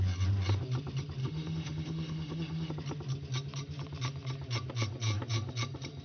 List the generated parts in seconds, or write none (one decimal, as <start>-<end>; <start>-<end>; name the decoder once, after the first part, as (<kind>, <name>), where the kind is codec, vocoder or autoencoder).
1.2-2.7 (autoencoder, DAC-VAE)